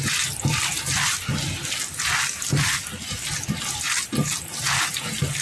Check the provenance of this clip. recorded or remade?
recorded